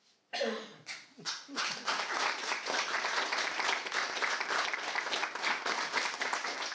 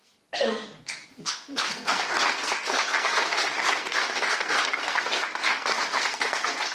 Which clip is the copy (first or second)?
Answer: second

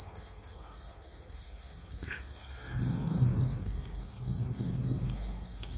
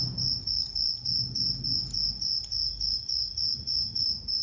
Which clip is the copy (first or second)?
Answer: first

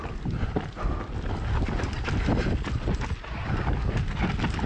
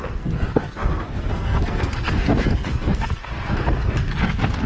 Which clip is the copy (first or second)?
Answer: second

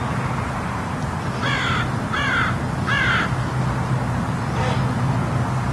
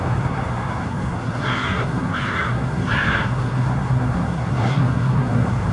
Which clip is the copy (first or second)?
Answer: second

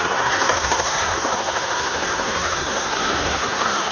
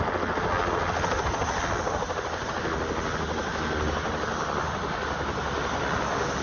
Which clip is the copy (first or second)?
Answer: first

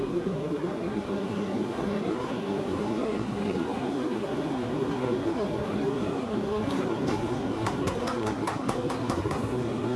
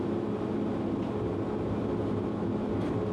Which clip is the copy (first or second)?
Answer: first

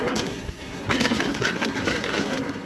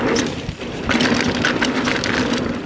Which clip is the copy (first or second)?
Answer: first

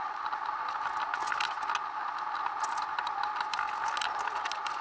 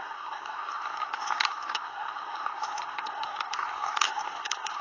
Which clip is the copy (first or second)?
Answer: second